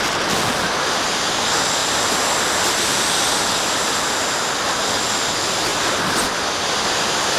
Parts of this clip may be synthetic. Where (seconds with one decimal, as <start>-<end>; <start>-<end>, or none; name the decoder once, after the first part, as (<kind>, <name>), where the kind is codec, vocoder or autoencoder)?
none